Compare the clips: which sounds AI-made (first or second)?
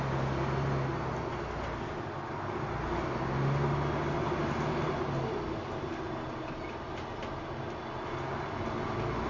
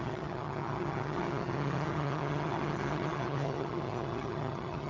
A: second